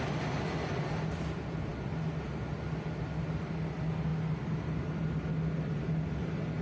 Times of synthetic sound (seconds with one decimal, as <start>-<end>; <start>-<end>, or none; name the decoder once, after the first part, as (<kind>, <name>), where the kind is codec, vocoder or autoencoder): none